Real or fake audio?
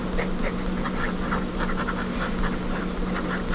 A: real